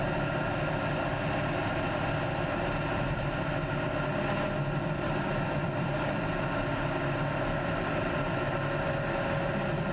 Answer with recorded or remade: recorded